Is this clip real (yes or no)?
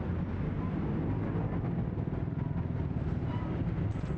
yes